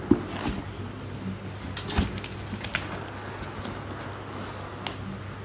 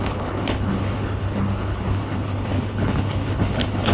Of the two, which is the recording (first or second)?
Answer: first